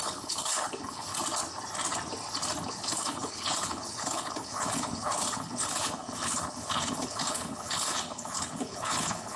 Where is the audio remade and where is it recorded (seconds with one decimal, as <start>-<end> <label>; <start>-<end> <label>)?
0.0-1.1 remade; 1.1-2.7 recorded; 2.7-9.4 remade